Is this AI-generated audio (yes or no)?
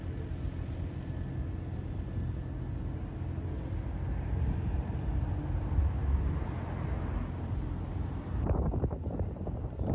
no